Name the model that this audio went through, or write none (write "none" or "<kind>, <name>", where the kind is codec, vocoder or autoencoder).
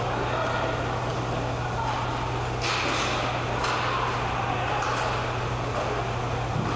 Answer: none